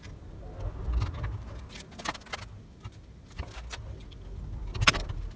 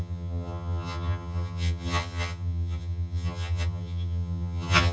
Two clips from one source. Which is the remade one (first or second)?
second